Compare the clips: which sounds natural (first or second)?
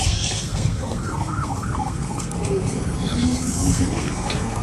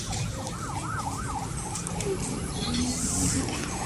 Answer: second